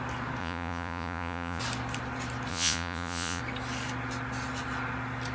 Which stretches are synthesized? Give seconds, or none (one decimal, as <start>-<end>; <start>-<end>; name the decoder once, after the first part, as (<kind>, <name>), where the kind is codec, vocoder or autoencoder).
0.4-1.6 (vocoder, Vocos); 2.5-3.4